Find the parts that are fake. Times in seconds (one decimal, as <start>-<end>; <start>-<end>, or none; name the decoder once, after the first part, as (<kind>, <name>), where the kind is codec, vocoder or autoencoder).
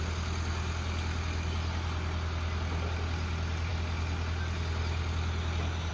none